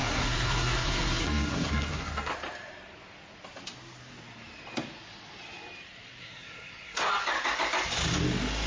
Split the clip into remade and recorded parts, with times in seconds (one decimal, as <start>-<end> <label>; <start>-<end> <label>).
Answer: 0.0-2.3 remade; 2.3-6.2 recorded; 6.2-7.1 remade; 7.1-8.7 recorded